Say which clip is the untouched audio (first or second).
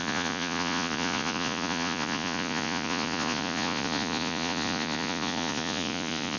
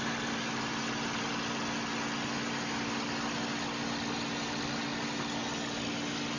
second